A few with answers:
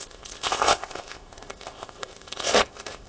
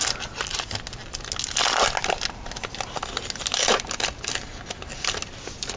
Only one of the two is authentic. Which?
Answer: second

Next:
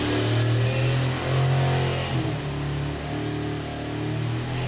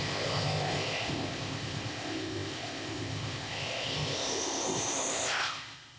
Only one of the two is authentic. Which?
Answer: first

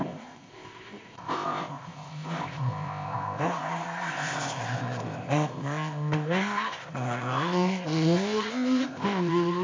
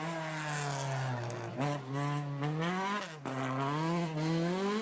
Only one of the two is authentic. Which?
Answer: second